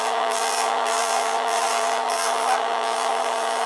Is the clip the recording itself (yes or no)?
no